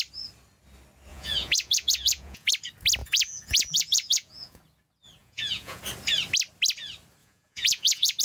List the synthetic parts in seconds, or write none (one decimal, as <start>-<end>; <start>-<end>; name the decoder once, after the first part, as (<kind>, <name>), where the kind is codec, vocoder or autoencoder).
1.1-2.5 (vocoder, Vocos); 3.0-4.6; 5.2-5.8; 7.2-8.2